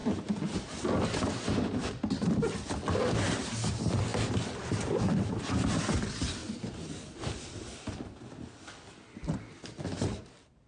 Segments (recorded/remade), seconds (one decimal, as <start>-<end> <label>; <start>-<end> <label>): 0.0-10.7 recorded